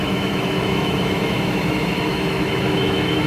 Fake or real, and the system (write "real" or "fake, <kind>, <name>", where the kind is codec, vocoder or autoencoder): fake, autoencoder, DAC-VAE